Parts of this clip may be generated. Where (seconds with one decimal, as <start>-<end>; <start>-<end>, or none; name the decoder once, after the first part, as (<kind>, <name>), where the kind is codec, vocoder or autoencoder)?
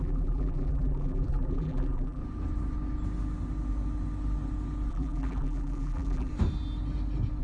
0.0-2.2 (vocoder, BigVGAN v2); 4.9-6.3